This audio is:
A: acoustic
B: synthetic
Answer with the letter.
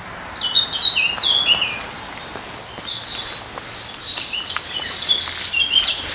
A